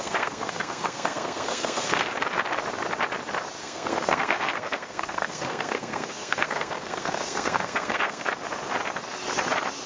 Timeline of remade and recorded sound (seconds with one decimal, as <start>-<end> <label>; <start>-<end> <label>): 0.0-2.1 remade; 2.1-3.6 recorded; 3.6-8.3 remade; 8.3-9.9 recorded